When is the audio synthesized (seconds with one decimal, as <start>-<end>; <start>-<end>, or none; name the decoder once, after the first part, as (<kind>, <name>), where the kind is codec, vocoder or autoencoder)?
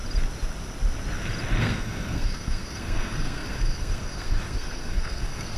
1.6-5.6 (codec, SNAC)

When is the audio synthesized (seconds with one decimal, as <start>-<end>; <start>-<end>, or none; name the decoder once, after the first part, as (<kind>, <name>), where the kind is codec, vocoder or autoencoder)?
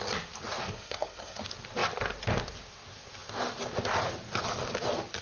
0.6-1.4 (codec, SNAC)